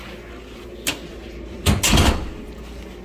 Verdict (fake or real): real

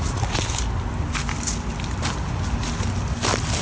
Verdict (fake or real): real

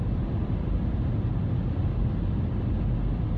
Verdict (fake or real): real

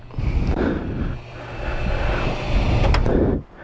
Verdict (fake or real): real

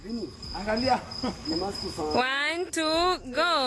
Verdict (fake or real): real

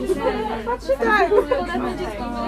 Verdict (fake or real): real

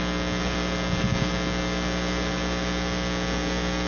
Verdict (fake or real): real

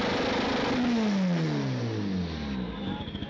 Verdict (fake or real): real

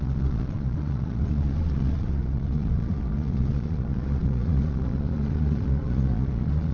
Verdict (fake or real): fake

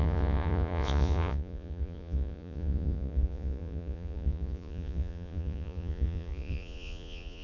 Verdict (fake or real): fake